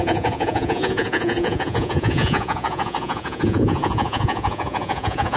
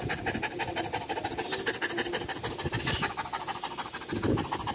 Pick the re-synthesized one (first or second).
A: first